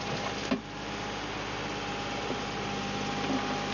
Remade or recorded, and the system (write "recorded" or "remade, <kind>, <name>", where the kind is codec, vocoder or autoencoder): recorded